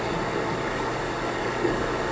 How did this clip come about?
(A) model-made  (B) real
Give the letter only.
A